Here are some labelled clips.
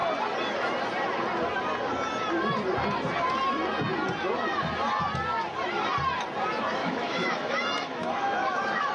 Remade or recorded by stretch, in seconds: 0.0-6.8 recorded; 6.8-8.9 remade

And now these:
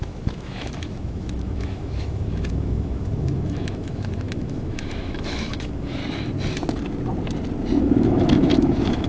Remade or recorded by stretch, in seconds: 0.0-6.0 remade; 6.0-7.8 recorded; 7.8-9.1 remade